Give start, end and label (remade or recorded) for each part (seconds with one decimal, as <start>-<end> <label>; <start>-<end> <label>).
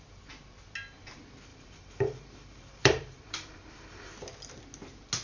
0.0-1.5 recorded; 1.5-4.1 remade; 4.1-5.2 recorded